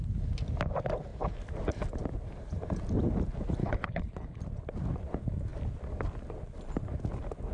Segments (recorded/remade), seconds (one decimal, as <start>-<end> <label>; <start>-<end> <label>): 0.0-3.6 recorded; 3.6-4.4 remade; 4.4-7.5 recorded